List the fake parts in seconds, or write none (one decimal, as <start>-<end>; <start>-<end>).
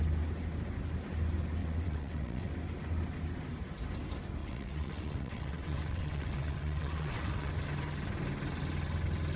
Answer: 1.6-2.5; 4.4-7.5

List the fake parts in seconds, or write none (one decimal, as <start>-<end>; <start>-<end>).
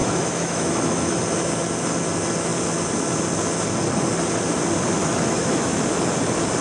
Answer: 0.0-1.2; 5.0-5.8